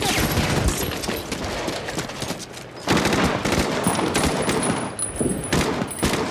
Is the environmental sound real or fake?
real